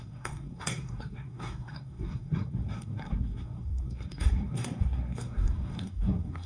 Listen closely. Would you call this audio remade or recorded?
remade